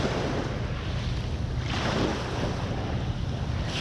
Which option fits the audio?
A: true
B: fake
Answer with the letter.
A